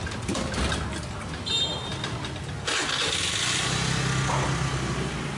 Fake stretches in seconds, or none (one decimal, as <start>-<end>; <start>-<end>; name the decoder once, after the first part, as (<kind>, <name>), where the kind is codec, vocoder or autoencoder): none